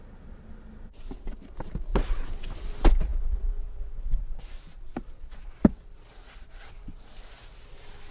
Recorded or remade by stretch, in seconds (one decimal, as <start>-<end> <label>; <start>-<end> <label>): 0.0-8.1 recorded